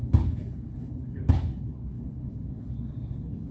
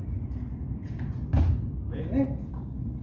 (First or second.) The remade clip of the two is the first